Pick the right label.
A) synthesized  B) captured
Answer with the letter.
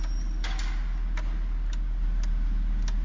B